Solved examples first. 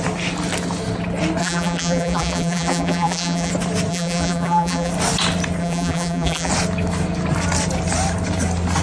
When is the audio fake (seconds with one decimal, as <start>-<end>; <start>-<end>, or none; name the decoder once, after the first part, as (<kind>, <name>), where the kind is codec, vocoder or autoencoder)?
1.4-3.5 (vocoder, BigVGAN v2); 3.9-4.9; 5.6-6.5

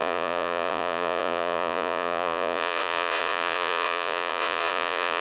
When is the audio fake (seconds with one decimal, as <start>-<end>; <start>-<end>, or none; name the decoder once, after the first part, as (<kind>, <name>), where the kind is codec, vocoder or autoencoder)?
0.0-5.2 (vocoder, Vocos)

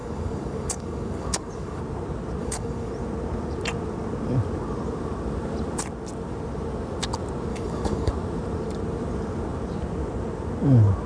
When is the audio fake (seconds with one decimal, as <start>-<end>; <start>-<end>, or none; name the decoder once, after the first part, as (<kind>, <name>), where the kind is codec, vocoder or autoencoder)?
0.0-1.8 (codec, DAC); 2.4-2.9; 7.5-8.1

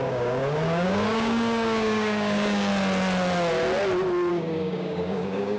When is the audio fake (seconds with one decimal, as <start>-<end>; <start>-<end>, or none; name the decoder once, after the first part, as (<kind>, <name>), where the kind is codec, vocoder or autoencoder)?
0.0-2.7 (codec, DAC); 4.3-5.6

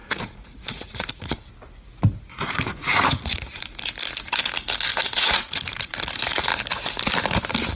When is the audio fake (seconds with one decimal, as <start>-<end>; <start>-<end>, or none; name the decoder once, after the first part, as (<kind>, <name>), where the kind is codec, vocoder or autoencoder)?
0.0-1.3 (vocoder, Vocos); 2.3-3.6; 4.9-5.9

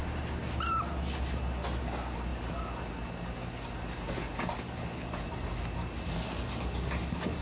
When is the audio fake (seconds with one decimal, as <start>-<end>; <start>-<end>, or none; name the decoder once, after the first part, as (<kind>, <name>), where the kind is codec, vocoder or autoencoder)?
none